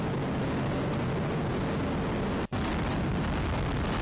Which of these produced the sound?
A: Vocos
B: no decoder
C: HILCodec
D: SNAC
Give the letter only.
B